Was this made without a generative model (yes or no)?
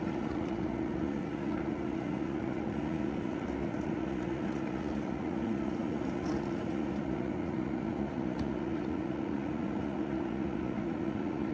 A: no